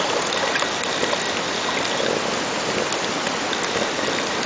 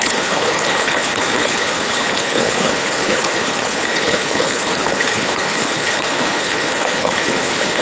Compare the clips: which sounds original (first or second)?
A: first